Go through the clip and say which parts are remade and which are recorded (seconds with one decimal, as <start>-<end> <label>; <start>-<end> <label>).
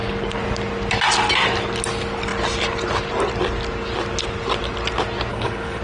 0.0-5.3 recorded; 5.3-5.8 remade